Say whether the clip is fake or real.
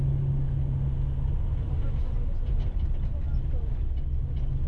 real